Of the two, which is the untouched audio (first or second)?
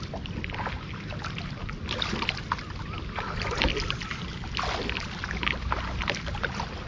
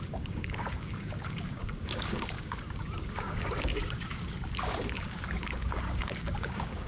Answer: first